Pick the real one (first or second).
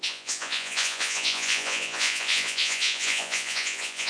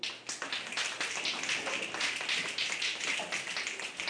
second